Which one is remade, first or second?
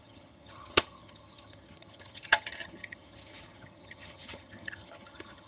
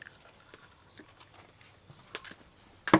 first